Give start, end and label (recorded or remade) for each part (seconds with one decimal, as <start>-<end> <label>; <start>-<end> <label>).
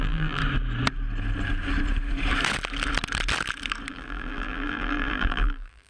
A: 0.0-0.4 remade; 0.4-3.9 recorded; 3.9-5.9 remade